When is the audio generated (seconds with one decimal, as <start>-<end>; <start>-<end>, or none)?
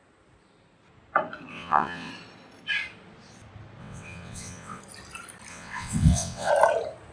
1.5-2.1; 3.8-4.8; 5.5-6.5